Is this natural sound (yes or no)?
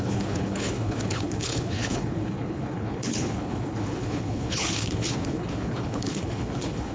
no